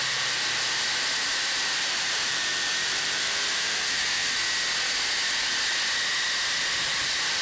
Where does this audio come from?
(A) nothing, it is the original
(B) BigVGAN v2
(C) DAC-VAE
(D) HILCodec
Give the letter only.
A